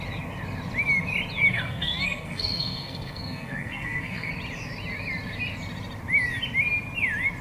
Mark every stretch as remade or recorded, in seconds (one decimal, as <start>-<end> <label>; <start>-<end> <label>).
0.0-1.5 recorded; 1.5-4.3 remade; 4.3-7.4 recorded